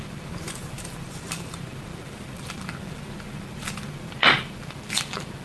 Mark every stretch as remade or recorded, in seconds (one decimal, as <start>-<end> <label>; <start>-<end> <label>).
0.0-5.4 remade